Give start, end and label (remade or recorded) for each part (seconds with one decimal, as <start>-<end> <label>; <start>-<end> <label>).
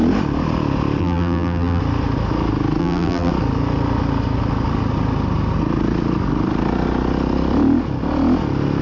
0.0-1.0 recorded; 1.0-1.8 remade; 1.8-2.8 recorded; 2.8-3.3 remade; 3.3-8.8 recorded